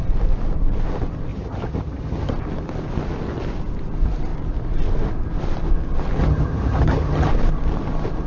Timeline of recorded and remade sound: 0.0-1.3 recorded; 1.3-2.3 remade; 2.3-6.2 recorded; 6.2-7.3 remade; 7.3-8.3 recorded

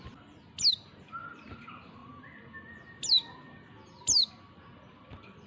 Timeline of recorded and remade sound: 0.0-5.5 recorded

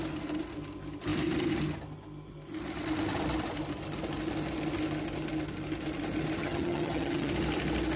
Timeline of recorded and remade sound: 0.0-6.4 recorded; 6.4-7.3 remade; 7.3-8.0 recorded

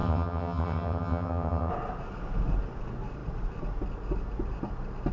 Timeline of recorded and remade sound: 0.0-1.7 remade; 1.7-5.1 recorded

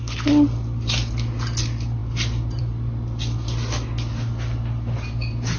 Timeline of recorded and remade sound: 0.0-5.6 recorded

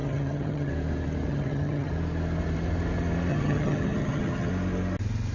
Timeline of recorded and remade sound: 0.0-0.7 remade; 0.7-1.3 recorded; 1.3-1.9 remade; 1.9-3.3 recorded; 3.3-4.5 remade; 4.5-5.3 recorded

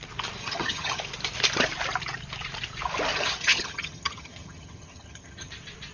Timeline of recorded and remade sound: 0.0-0.4 recorded; 0.4-1.0 remade; 1.0-3.1 recorded; 3.1-5.5 remade; 5.5-5.9 recorded